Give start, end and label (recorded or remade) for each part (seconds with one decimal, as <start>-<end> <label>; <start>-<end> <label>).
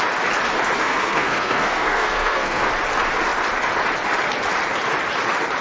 0.0-0.8 recorded; 0.8-2.7 remade; 2.7-5.6 recorded